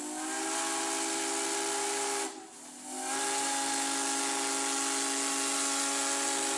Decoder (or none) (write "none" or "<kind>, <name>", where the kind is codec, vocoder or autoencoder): none